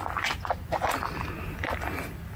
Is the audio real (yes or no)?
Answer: yes